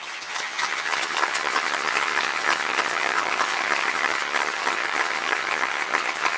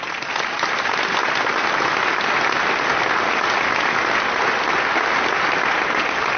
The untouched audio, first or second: second